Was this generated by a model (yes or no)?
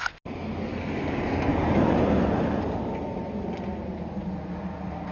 no